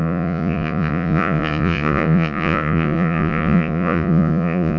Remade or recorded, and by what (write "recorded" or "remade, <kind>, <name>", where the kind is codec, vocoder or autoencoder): remade, vocoder, Vocos